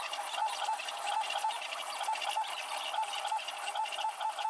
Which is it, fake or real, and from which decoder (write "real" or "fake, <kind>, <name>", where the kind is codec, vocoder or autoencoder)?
real